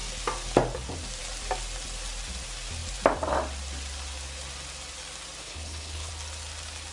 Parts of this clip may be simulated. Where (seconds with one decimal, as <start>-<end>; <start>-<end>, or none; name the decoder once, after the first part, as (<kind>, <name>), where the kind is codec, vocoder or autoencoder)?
5.4-6.1 (codec, HILCodec)